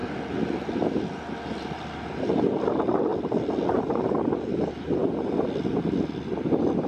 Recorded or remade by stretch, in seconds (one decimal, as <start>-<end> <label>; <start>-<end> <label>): 0.0-3.1 remade; 3.1-3.9 recorded; 3.9-5.0 remade; 5.0-6.9 recorded